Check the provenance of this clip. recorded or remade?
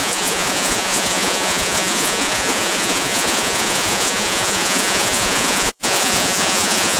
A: remade